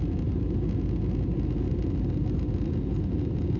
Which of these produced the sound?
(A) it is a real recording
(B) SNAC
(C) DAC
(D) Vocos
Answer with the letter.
A